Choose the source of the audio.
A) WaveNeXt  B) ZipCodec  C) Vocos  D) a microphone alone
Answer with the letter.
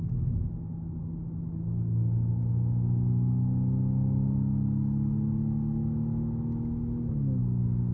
D